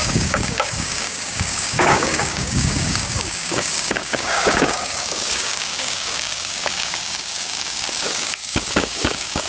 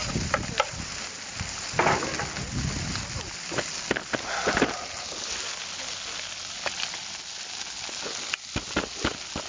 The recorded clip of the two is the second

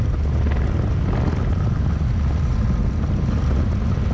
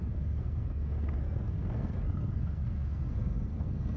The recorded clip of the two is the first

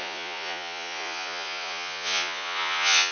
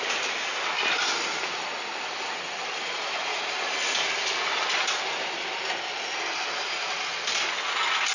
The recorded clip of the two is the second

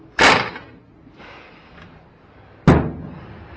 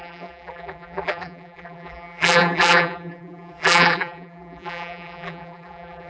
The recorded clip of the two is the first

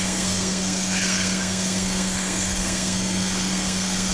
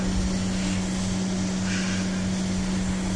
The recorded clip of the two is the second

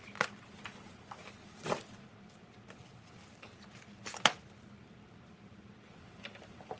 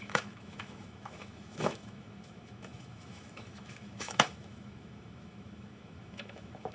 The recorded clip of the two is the first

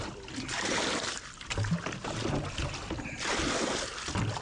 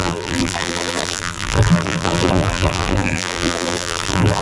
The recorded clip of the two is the first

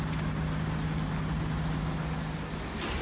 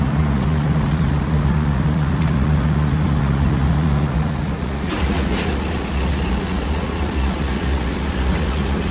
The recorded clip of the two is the first